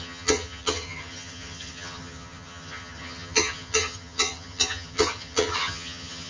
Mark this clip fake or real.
fake